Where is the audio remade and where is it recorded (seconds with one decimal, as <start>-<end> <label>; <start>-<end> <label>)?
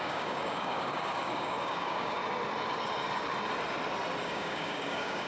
0.0-2.2 remade; 2.2-4.2 recorded; 4.2-5.3 remade